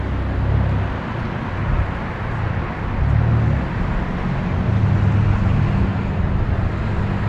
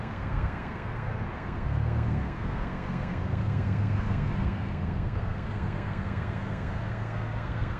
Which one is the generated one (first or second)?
second